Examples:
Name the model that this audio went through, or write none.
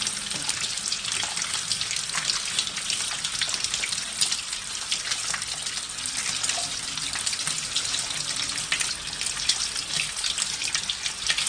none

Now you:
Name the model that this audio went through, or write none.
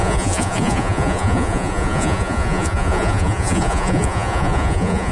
vocoder, Vocos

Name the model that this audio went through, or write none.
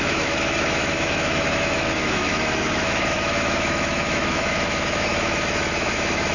autoencoder, DAC-VAE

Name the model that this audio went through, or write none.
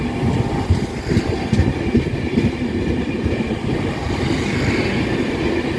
none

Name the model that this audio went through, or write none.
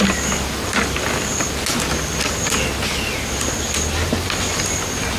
none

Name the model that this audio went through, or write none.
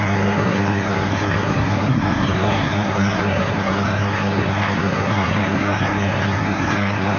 codec, SNAC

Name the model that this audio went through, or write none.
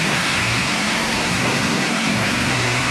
codec, SNAC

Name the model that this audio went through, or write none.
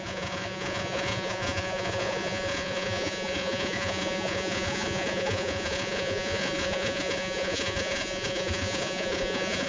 vocoder, Vocos